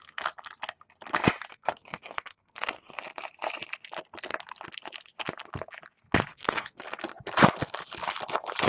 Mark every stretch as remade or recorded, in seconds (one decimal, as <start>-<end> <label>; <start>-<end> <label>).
0.0-1.5 recorded; 1.5-3.0 remade; 3.0-6.3 recorded; 6.3-6.8 remade; 6.8-8.7 recorded